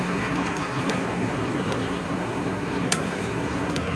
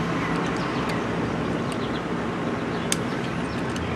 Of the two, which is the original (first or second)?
second